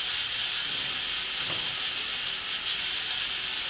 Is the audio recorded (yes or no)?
yes